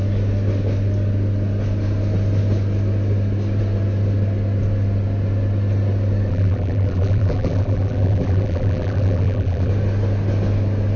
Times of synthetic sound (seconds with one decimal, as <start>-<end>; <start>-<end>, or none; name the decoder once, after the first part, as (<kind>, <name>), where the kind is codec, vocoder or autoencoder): 6.3-9.7 (vocoder, BigVGAN v2)